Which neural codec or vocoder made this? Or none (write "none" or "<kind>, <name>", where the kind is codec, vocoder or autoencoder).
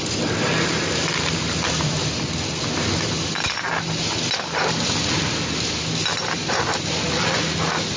none